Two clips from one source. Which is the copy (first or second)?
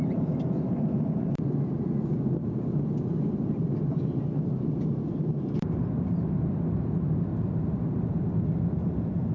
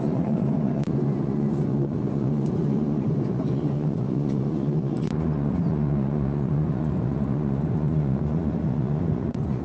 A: second